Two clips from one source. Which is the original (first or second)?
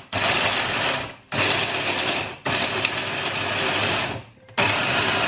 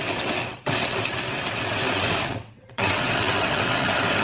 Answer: first